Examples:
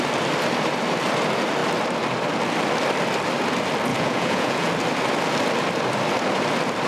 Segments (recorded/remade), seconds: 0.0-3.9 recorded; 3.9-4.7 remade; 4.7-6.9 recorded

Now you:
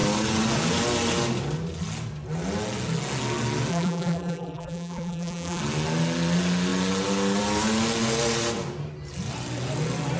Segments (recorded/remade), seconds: 0.0-3.7 recorded; 3.7-5.6 remade; 5.6-10.2 recorded

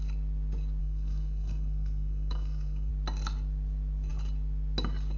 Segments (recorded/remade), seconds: 0.0-0.8 recorded; 0.8-2.9 remade; 2.9-5.2 recorded

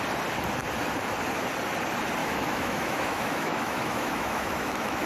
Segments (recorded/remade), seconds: 0.0-2.2 recorded; 2.2-5.1 remade